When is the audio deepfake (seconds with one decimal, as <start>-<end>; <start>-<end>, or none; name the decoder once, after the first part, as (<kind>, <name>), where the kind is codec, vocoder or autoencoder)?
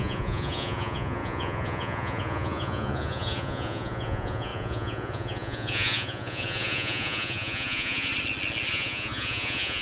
0.0-8.1 (vocoder, Vocos); 8.7-9.8